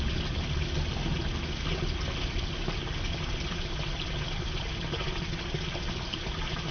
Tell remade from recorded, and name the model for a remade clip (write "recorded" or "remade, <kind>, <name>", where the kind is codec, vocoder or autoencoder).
recorded